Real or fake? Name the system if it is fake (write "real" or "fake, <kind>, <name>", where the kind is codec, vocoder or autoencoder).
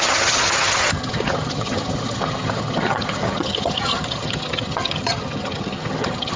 fake, vocoder, HiFi-GAN